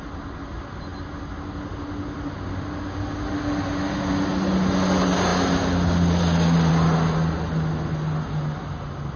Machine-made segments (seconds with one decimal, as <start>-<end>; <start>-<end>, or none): none